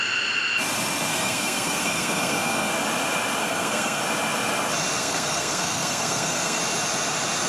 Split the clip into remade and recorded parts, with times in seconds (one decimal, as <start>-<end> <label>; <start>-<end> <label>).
0.0-1.1 recorded; 1.1-2.7 remade; 2.7-3.4 recorded; 3.4-4.0 remade; 4.0-5.0 recorded; 5.0-6.6 remade; 6.6-7.5 recorded